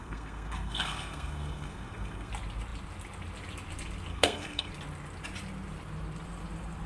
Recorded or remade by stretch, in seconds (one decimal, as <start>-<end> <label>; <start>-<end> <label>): 0.0-2.3 remade; 2.3-4.1 recorded; 4.1-4.7 remade; 4.7-6.9 recorded